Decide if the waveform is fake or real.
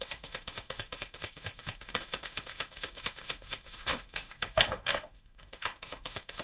fake